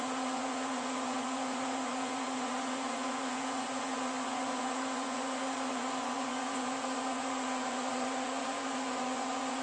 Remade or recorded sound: remade